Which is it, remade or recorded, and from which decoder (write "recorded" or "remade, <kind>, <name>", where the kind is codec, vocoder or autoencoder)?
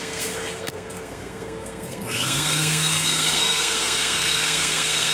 remade, codec, SNAC